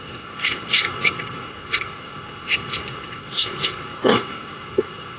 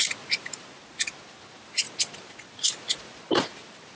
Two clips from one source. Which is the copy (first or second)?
first